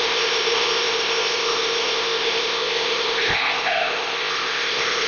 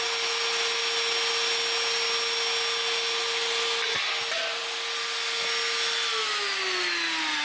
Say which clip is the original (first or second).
second